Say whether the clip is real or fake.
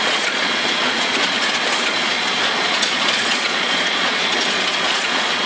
fake